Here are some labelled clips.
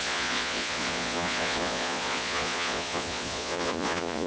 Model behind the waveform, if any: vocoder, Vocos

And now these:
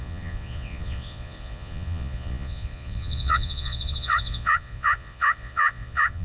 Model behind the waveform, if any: vocoder, Vocos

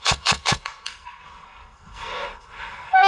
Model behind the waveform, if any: codec, SNAC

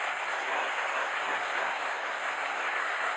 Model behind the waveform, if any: codec, SNAC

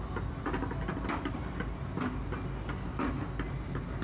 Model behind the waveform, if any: none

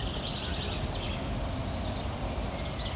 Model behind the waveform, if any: none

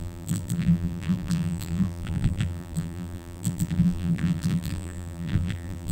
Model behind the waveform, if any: vocoder, BigVGAN v2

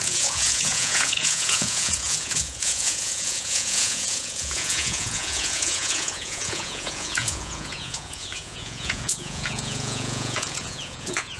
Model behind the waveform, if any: vocoder, Vocos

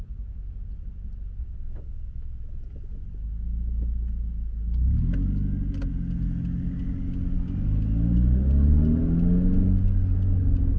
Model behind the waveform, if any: none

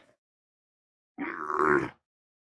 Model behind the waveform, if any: codec, DAC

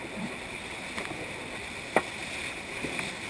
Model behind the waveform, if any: none